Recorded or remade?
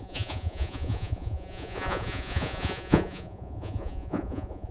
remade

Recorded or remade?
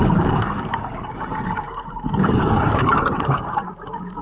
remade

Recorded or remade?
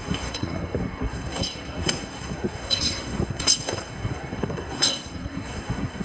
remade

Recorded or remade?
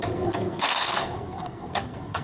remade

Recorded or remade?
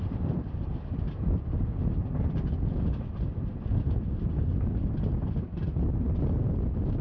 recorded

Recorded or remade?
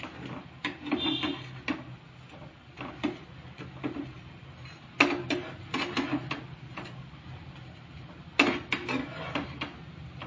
recorded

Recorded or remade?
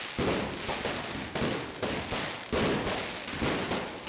recorded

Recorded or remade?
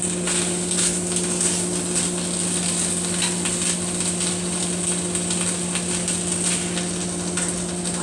recorded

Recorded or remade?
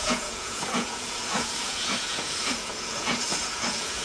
remade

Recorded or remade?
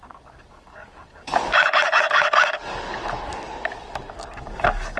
remade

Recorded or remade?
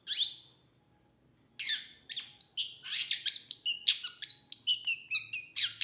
recorded